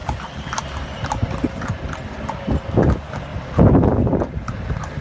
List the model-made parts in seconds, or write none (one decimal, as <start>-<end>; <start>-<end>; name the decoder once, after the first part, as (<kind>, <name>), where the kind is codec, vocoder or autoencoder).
none